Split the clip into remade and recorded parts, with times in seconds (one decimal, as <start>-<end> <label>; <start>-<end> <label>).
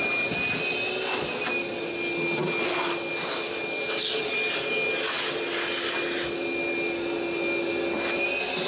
0.0-8.7 recorded